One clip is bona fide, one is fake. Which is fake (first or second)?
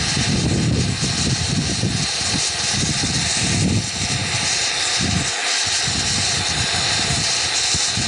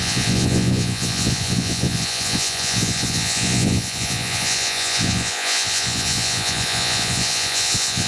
second